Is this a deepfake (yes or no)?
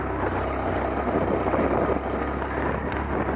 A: no